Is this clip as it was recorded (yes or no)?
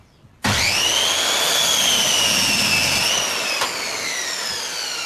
yes